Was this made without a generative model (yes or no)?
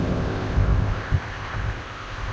no